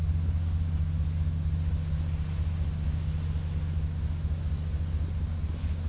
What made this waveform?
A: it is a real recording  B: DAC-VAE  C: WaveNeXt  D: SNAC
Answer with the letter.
A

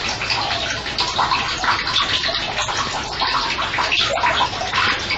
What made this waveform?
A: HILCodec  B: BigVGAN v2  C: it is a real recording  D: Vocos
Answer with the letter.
C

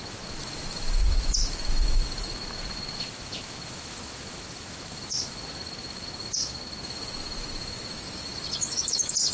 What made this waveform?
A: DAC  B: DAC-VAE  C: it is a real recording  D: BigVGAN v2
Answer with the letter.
B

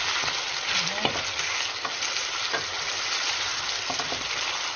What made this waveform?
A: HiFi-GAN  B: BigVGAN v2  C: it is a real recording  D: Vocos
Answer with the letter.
C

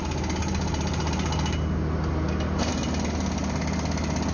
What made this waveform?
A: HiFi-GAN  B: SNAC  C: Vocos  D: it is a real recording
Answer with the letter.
D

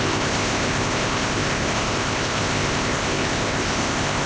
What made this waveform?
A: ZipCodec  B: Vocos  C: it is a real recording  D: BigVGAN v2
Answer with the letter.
A